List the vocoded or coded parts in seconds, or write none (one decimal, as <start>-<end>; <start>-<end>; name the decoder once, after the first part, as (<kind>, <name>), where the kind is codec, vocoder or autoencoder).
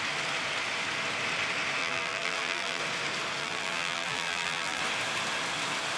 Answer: 1.8-2.8 (vocoder, BigVGAN v2); 3.4-4.8